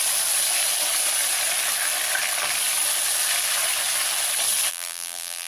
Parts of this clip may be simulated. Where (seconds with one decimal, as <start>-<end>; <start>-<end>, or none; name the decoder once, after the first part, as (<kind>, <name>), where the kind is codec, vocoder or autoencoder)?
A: 4.7-5.5 (vocoder, BigVGAN v2)